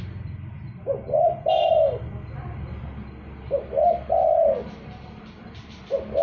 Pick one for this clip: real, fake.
real